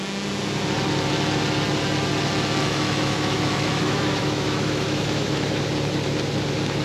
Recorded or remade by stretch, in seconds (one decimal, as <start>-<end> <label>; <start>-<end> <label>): 0.0-2.6 recorded; 2.6-5.6 remade; 5.6-6.8 recorded